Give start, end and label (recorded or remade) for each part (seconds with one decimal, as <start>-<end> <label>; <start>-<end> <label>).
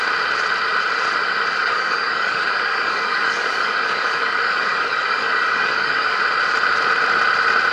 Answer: 0.0-1.6 recorded; 1.6-6.2 remade; 6.2-7.7 recorded